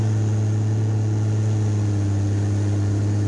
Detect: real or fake real